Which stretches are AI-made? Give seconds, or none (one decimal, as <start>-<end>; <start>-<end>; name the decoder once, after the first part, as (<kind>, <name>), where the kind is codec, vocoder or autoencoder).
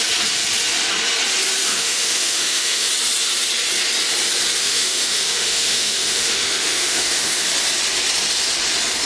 1.7-2.9 (autoencoder, DAC-VAE); 4.6-7.4